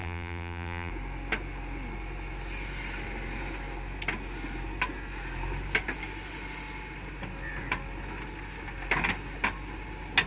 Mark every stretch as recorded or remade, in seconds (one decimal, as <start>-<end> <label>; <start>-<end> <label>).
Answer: 0.0-0.9 remade; 0.9-10.3 recorded